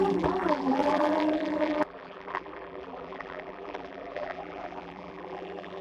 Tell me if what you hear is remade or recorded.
remade